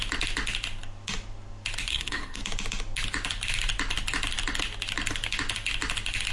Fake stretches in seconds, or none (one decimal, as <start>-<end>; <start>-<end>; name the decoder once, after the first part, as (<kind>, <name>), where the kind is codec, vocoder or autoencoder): 1.9-2.4 (codec, SNAC)